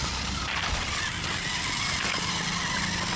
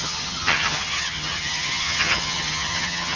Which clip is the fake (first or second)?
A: second